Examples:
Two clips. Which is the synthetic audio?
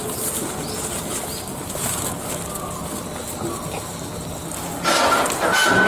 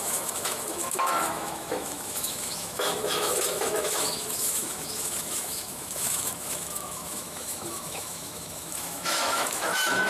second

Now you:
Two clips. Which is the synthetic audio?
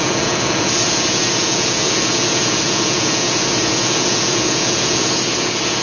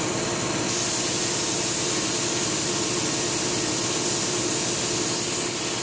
first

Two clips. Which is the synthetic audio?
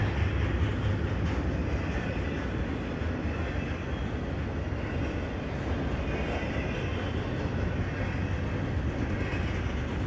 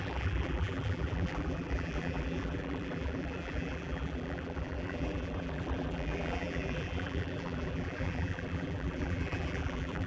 second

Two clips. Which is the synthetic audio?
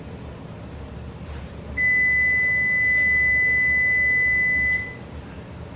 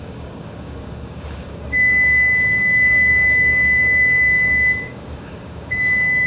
second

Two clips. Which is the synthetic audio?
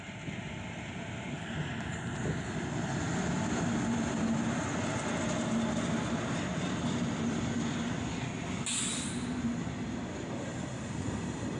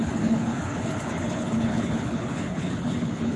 second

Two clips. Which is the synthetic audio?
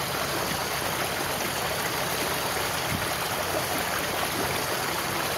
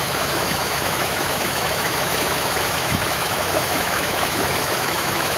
second